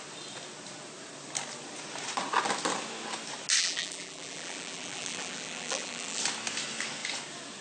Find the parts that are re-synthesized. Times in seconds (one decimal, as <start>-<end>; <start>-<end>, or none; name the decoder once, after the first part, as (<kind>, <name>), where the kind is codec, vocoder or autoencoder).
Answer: 3.6-6.2 (vocoder, BigVGAN v2)